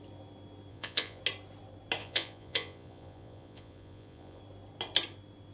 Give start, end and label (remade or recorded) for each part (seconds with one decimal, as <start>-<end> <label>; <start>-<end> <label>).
0.0-0.7 recorded; 0.7-1.2 remade; 1.2-2.0 recorded; 2.0-4.4 remade; 4.4-5.5 recorded